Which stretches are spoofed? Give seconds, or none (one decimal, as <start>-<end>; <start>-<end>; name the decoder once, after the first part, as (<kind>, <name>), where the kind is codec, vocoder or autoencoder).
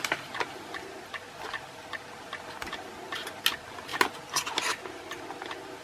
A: none